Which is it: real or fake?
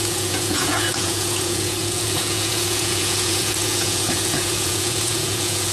fake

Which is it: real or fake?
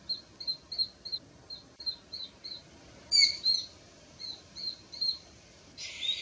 real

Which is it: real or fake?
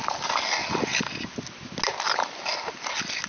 real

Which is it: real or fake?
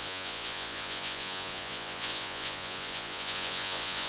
fake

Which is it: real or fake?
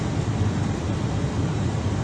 real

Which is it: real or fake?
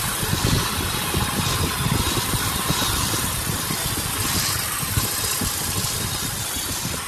real